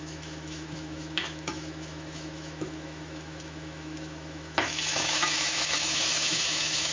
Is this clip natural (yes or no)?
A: no